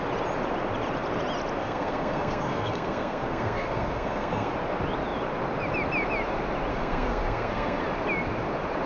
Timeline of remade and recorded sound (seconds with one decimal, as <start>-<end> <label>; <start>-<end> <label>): 0.0-1.6 recorded; 1.6-4.5 remade; 4.5-6.7 recorded; 6.7-7.8 remade; 7.8-8.9 recorded